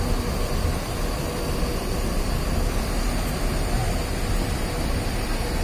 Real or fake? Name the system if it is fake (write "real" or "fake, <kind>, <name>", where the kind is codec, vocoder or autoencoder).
real